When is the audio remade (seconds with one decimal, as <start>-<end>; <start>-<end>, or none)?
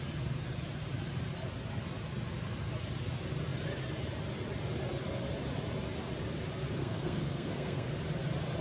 6.8-8.0